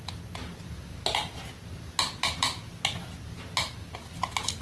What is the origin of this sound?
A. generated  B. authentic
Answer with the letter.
B